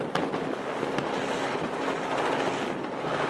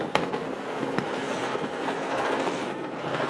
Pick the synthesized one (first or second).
second